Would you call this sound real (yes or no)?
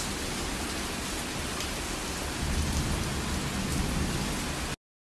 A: yes